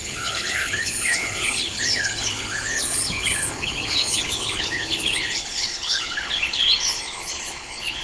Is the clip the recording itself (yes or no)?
no